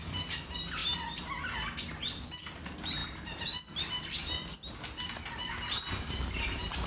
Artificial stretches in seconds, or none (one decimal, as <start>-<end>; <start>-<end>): none